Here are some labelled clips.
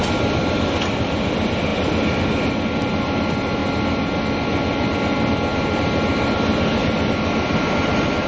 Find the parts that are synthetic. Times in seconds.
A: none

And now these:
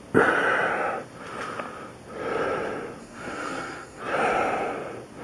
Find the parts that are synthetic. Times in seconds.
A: 3.0-4.0 (codec, SNAC)

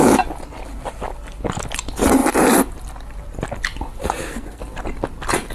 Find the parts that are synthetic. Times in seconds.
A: 4.0-4.6 (codec, SNAC)

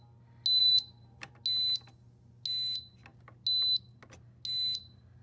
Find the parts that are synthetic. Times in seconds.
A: 0.6-1.3 (vocoder, BigVGAN v2)